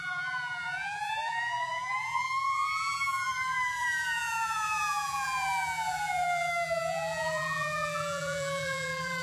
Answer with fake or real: fake